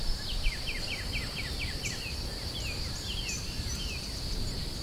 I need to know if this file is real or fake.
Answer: fake